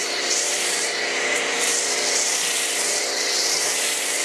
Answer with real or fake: fake